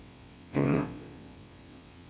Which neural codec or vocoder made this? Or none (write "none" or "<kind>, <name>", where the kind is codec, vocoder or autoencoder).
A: vocoder, WaveNeXt